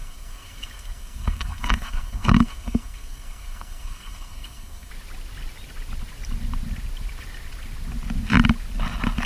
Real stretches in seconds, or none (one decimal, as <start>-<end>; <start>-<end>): 4.9-9.3